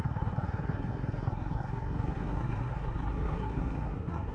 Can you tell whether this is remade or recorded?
remade